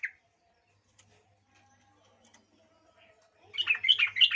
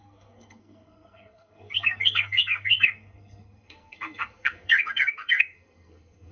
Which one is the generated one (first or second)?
second